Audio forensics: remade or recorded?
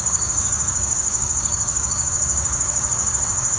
remade